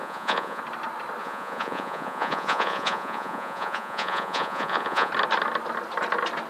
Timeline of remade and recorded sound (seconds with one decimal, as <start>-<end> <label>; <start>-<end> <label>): 0.0-0.6 remade; 0.6-1.2 recorded; 1.2-5.1 remade; 5.1-6.5 recorded